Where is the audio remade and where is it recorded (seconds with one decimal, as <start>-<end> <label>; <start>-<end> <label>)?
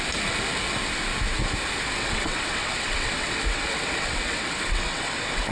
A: 0.0-2.0 recorded; 2.0-5.5 remade